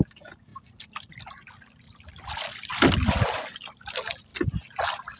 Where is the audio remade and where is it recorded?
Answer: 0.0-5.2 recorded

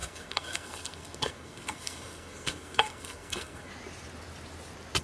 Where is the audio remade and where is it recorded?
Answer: 0.0-3.7 remade; 3.7-5.0 recorded

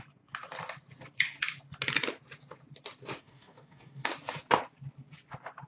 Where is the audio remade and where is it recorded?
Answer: 0.0-3.2 recorded; 3.2-4.1 remade; 4.1-5.7 recorded

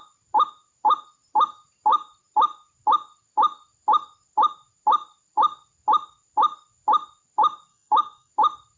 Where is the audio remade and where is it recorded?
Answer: 0.0-7.7 recorded; 7.7-8.3 remade; 8.3-8.8 recorded

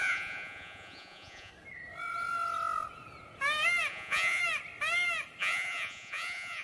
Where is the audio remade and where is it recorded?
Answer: 0.0-1.5 remade; 1.5-3.9 recorded; 3.9-4.4 remade; 4.4-5.4 recorded; 5.4-6.6 remade

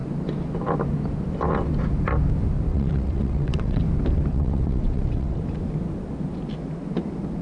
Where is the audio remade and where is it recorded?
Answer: 0.0-2.7 recorded; 2.7-3.8 remade; 3.8-4.3 recorded; 4.3-5.4 remade; 5.4-7.4 recorded